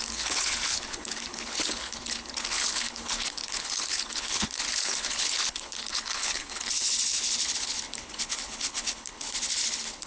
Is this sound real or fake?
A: fake